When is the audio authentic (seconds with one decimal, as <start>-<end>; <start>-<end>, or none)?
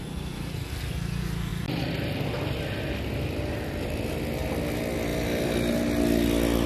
0.0-6.7